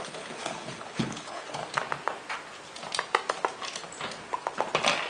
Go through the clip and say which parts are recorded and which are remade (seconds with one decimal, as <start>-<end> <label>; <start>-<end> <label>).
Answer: 0.0-1.6 remade; 1.6-5.1 recorded